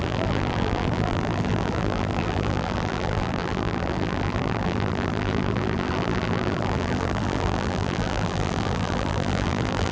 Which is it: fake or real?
fake